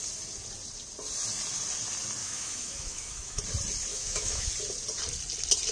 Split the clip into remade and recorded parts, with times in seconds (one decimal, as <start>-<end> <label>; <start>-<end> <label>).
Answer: 0.0-2.2 recorded; 2.2-3.4 remade; 3.4-3.9 recorded; 3.9-4.5 remade; 4.5-5.7 recorded